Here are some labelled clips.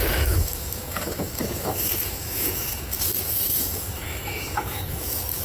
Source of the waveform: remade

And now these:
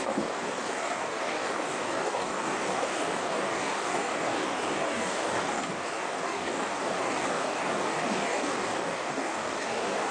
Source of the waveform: remade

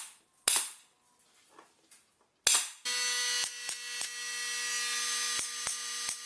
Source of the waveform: recorded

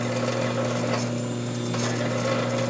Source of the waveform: recorded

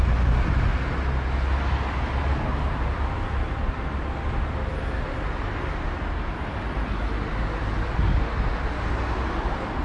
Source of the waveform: recorded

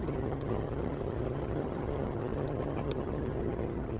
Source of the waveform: remade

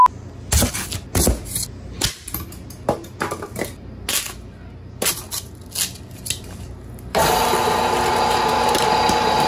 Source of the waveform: recorded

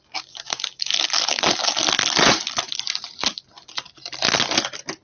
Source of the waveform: recorded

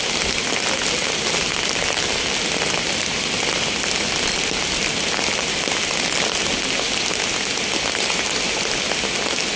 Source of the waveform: recorded